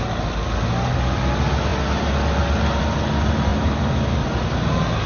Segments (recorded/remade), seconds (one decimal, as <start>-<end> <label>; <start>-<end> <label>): 0.0-5.1 recorded